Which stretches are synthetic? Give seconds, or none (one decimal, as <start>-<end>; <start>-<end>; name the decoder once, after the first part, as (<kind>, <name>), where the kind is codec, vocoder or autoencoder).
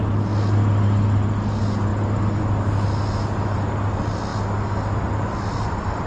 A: none